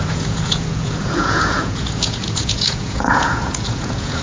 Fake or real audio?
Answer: fake